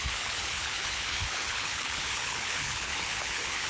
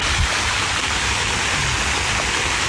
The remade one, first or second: first